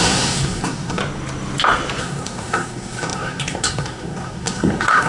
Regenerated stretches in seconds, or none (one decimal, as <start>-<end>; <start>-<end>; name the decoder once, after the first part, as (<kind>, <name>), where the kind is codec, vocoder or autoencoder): 0.0-1.0 (codec, SNAC); 2.0-5.1

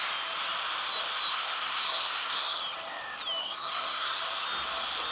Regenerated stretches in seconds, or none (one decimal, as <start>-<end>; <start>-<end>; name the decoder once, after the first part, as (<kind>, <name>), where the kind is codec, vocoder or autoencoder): 1.3-2.6 (codec, SNAC); 3.4-4.2

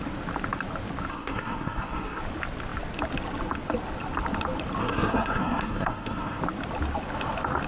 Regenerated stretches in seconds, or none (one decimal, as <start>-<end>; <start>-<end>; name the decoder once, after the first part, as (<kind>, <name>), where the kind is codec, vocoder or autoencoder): 1.1-2.2 (codec, SNAC); 4.8-6.4